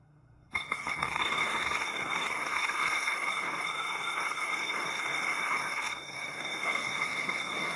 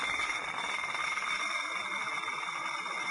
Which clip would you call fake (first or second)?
first